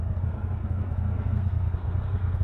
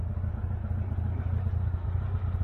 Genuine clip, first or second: second